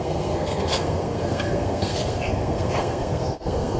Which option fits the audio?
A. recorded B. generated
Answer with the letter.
B